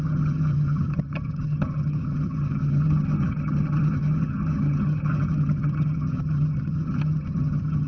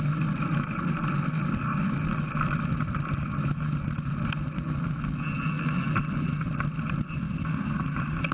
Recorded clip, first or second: second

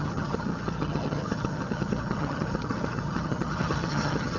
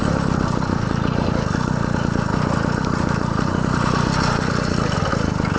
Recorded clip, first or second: second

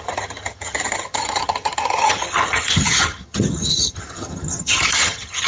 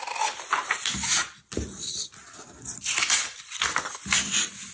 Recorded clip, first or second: second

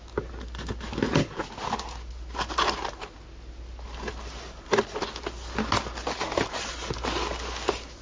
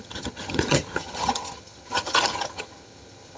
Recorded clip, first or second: first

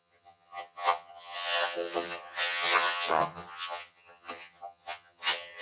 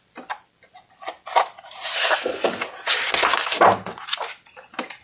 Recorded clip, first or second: second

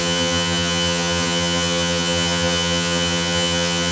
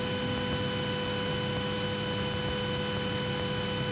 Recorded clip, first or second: second